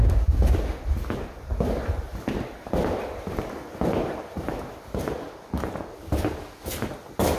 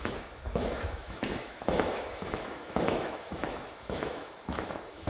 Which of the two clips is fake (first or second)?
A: second